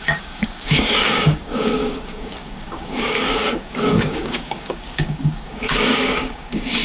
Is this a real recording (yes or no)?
no